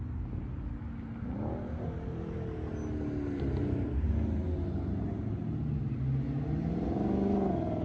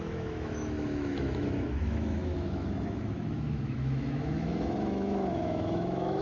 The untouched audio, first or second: first